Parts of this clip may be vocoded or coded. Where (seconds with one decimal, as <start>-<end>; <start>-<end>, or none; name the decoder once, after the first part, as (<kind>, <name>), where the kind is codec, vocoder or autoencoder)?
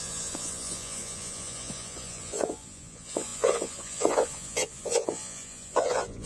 0.0-6.3 (vocoder, Vocos)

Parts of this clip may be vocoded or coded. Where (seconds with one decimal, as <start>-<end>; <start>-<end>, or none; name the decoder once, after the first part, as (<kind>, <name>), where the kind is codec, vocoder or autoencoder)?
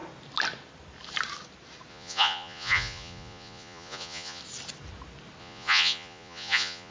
1.9-4.4 (vocoder, Vocos); 5.4-6.9